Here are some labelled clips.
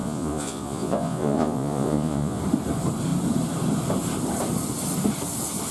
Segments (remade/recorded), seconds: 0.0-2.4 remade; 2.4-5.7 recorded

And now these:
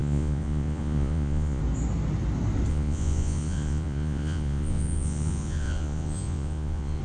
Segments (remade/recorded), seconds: 0.0-1.6 remade; 1.6-2.7 recorded; 2.7-7.0 remade

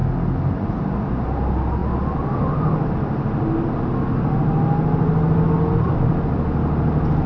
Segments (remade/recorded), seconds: 0.0-7.3 recorded

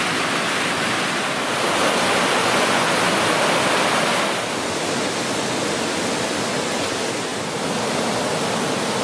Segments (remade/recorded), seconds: 0.0-2.4 recorded; 2.4-2.9 remade; 2.9-9.0 recorded

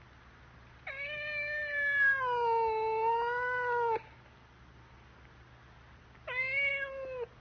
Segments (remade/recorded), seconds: 0.0-7.4 recorded

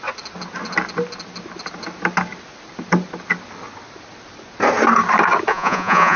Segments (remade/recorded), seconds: 0.0-5.5 recorded; 5.5-6.2 remade

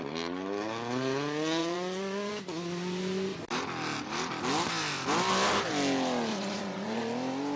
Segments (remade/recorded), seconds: 0.0-1.6 recorded; 1.6-2.3 remade; 2.3-6.3 recorded; 6.3-7.0 remade; 7.0-7.6 recorded

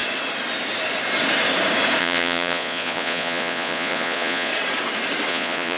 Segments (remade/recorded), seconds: 0.0-2.0 recorded; 2.0-4.5 remade; 4.5-5.3 recorded; 5.3-5.8 remade